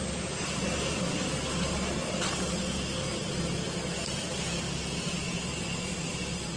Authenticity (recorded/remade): recorded